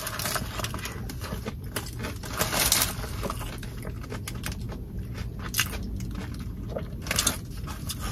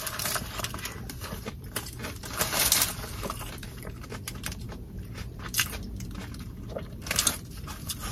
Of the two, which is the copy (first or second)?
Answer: second